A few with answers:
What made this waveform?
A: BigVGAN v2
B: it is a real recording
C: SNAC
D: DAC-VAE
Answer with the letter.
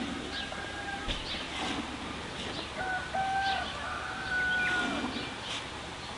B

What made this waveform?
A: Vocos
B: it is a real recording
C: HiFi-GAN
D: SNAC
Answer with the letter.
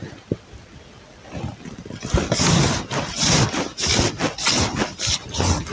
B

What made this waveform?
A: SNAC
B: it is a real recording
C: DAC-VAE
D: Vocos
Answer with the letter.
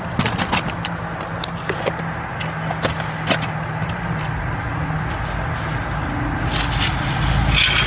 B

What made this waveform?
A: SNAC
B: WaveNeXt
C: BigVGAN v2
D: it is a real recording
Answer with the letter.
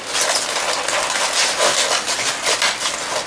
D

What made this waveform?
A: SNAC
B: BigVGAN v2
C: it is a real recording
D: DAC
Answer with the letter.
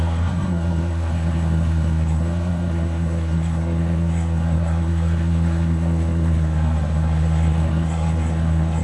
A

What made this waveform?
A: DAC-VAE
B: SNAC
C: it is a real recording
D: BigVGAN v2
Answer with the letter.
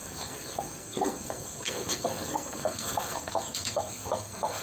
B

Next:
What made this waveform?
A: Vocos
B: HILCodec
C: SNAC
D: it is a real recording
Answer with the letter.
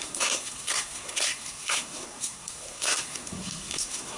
C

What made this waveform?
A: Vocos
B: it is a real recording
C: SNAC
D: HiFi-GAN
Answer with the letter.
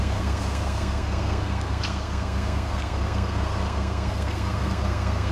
C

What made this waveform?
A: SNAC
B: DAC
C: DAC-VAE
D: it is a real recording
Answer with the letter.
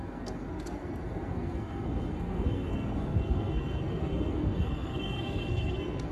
A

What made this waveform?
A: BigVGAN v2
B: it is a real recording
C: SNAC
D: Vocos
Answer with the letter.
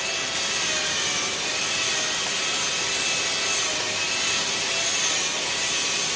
B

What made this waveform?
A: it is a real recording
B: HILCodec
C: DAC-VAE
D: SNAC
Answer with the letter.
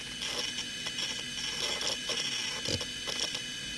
A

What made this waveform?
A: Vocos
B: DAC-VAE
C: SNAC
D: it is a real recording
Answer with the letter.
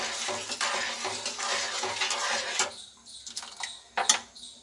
D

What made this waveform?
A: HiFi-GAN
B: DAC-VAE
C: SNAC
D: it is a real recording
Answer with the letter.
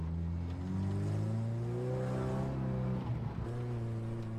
D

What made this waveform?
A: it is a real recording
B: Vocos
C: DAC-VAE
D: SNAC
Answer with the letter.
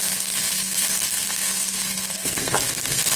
D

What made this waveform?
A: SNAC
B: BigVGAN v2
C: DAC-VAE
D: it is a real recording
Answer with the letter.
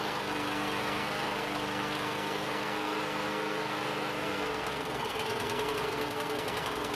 A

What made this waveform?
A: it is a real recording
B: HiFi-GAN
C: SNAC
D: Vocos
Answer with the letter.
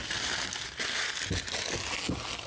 A